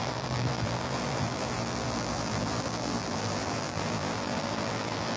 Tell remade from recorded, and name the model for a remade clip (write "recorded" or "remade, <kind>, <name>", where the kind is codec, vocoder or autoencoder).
remade, vocoder, BigVGAN v2